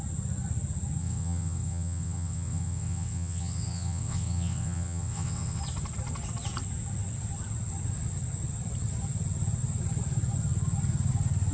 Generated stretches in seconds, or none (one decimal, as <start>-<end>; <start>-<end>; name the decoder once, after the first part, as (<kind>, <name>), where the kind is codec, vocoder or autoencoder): 1.0-5.6 (vocoder, WaveNeXt)